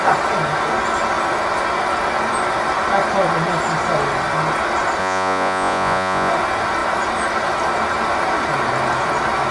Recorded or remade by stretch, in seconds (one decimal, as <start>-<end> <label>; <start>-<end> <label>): 0.0-5.0 recorded; 5.0-6.3 remade; 6.3-9.5 recorded